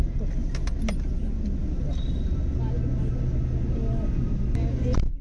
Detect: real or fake real